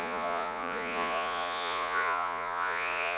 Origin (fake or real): fake